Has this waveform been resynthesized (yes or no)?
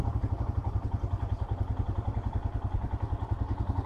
no